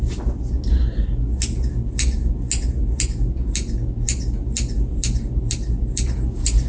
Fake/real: real